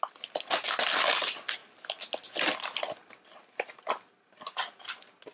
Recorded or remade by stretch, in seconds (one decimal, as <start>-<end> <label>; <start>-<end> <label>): 0.0-5.3 recorded